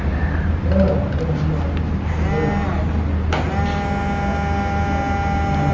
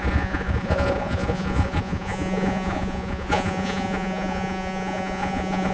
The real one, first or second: first